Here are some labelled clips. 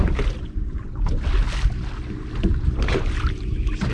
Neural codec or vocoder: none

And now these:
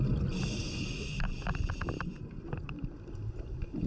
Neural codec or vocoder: vocoder, BigVGAN v2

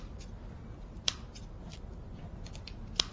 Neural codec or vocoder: none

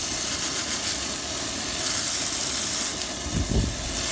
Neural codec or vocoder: none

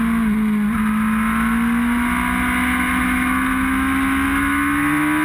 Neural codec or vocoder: none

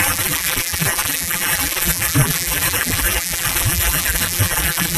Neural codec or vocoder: vocoder, BigVGAN v2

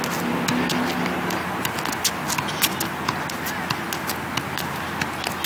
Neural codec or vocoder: none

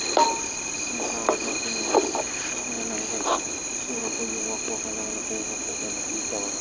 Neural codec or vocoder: none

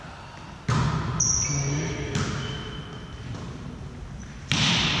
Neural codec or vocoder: none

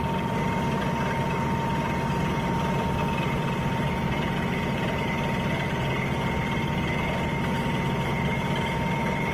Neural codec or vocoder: none